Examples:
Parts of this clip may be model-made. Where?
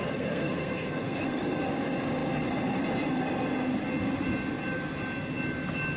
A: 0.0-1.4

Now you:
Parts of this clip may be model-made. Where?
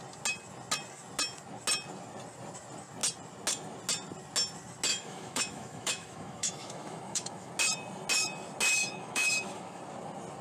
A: 4.9-7.5; 8.8-9.8